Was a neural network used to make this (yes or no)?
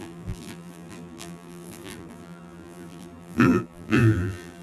yes